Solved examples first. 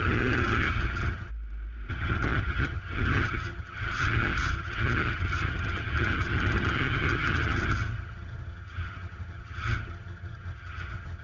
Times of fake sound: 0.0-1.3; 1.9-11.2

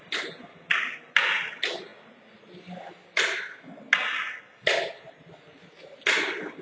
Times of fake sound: none

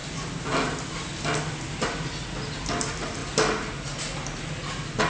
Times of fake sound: none

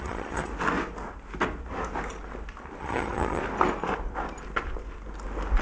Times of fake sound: 0.0-0.5; 2.8-3.4

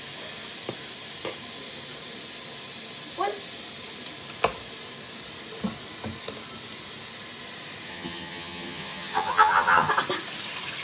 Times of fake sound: 7.9-9.9

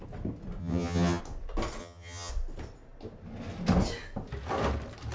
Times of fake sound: 0.6-1.2; 1.8-2.3

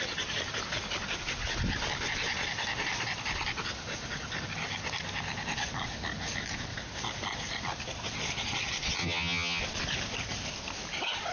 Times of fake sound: 9.0-9.6